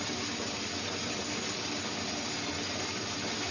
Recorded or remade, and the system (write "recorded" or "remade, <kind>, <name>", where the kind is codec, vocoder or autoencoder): recorded